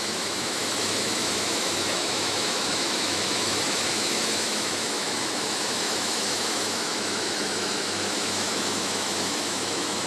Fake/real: fake